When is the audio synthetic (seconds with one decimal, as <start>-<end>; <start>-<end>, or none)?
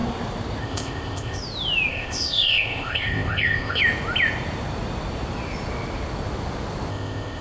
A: 0.6-1.4; 1.9-3.8; 6.9-7.4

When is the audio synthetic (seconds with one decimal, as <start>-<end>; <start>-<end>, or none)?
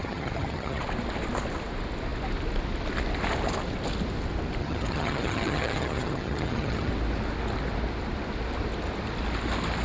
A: 0.0-0.8; 4.6-6.9